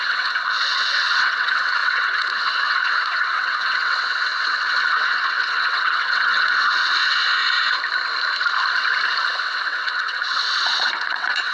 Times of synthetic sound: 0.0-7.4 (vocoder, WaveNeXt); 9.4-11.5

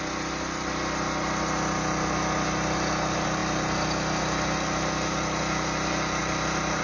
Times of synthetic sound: none